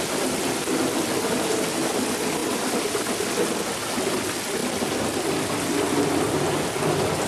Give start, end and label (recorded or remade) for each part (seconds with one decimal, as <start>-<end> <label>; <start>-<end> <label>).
0.0-7.3 recorded